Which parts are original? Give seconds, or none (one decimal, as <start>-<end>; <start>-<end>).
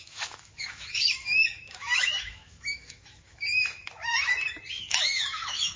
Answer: 4.1-4.7